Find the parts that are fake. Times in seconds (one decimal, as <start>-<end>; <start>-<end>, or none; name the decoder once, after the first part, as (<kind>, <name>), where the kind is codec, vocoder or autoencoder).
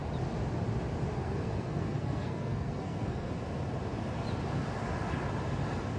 1.1-3.3 (codec, SNAC)